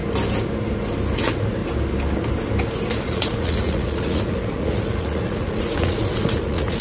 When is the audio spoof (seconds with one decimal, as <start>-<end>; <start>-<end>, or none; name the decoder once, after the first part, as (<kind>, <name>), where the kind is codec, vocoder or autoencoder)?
1.2-1.6 (vocoder, Vocos); 3.0-6.8